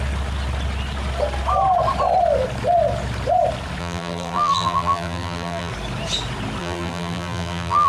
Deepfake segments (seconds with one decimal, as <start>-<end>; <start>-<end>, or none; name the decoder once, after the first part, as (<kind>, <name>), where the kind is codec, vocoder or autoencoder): 3.8-5.7 (vocoder, BigVGAN v2); 6.6-7.9